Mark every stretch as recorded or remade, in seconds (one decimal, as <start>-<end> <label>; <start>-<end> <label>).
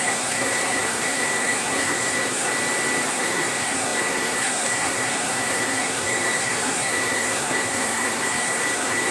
0.0-2.5 remade; 2.5-3.1 recorded; 3.1-9.1 remade